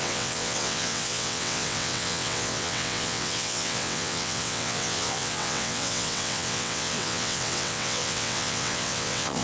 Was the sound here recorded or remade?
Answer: remade